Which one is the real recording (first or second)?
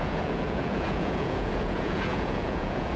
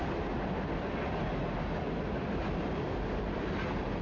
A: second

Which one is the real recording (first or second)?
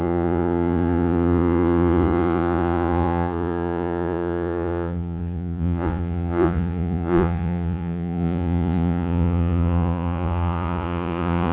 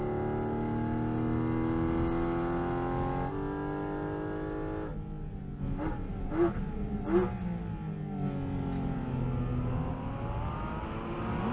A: second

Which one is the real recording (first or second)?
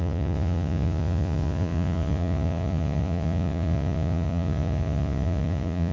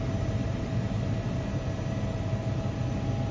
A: second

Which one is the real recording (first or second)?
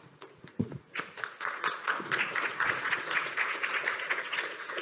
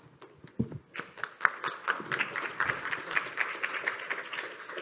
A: second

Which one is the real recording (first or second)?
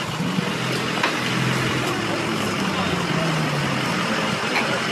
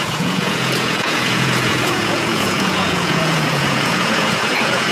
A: first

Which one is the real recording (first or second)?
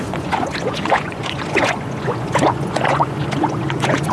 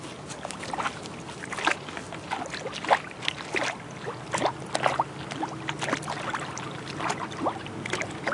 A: second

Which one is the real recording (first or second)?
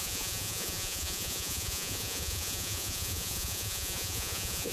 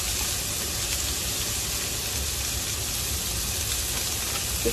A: second